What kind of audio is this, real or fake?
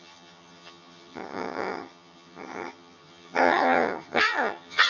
fake